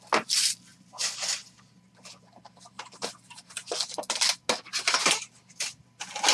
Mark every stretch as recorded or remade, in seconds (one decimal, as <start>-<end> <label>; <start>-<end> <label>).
0.0-6.3 recorded